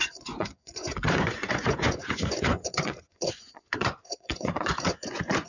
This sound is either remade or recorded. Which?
remade